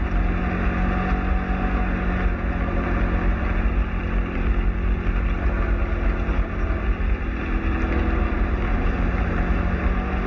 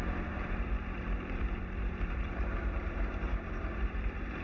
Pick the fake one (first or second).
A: second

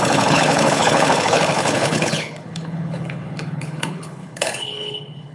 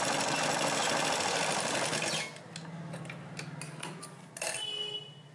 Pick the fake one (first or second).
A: first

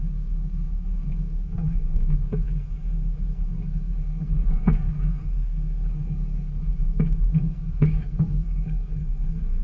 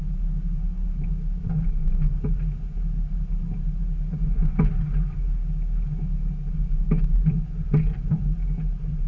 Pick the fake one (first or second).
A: first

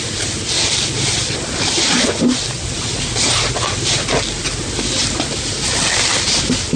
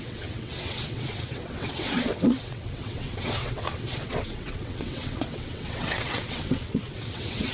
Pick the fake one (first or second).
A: second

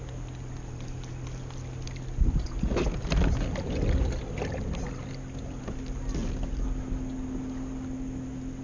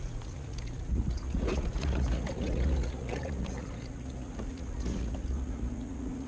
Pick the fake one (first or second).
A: second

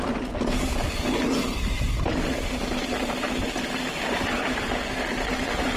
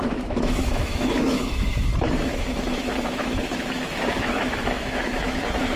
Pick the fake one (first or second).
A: second